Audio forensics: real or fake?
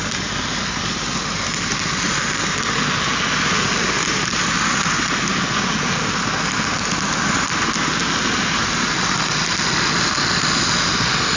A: real